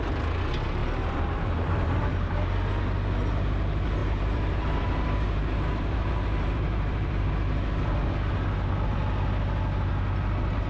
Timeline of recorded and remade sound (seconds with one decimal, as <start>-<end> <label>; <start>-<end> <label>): 0.0-0.8 recorded; 0.8-2.7 remade; 2.7-4.0 recorded; 4.0-7.3 remade; 7.3-10.7 recorded